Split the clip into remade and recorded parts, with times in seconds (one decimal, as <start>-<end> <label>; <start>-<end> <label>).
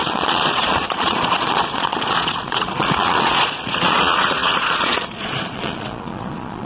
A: 0.0-6.7 remade